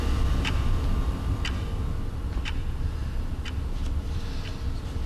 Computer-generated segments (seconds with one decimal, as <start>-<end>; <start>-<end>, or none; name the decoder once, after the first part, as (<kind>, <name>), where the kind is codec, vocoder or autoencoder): 2.2-4.2 (vocoder, BigVGAN v2)